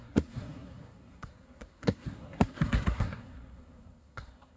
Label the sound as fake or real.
fake